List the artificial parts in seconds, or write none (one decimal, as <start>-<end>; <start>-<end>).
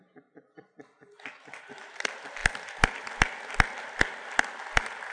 none